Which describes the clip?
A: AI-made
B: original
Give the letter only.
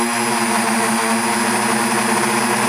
B